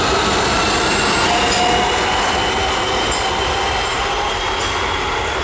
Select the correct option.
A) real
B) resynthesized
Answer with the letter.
A